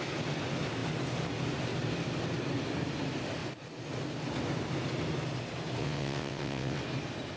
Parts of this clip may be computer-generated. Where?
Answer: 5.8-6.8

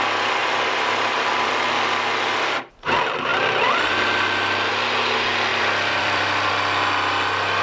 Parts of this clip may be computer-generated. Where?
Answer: 0.4-1.7; 5.5-6.5

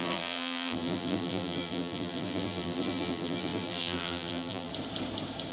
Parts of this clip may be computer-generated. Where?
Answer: 0.0-4.7

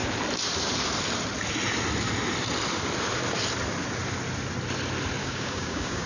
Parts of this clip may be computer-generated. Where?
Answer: 5.2-6.1

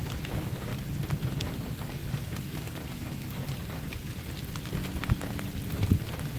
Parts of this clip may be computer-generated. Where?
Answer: 0.0-0.7; 1.4-3.4

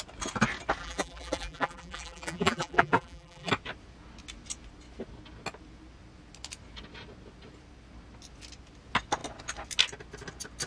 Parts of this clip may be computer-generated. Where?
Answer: 0.8-3.5

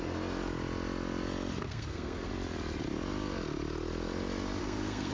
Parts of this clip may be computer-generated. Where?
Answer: 1.6-2.3; 4.6-5.1

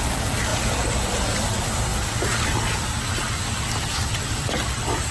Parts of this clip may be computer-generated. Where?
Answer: none